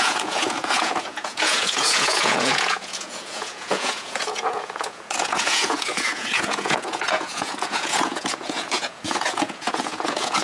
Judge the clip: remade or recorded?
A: remade